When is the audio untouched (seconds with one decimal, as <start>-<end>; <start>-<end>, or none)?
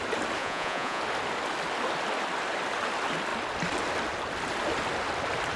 0.0-0.4; 1.0-5.6